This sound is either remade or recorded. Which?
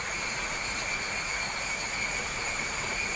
remade